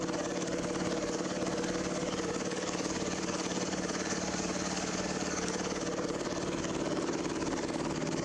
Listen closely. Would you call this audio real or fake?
fake